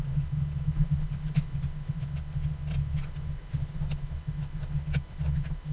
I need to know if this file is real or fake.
real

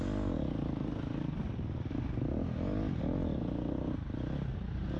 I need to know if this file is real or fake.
real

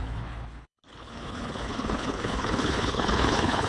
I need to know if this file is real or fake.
fake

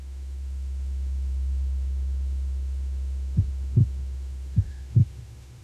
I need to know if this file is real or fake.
fake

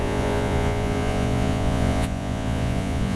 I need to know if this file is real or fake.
fake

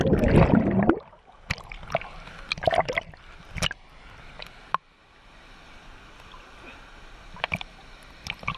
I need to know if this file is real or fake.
real